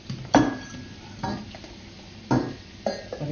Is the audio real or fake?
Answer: real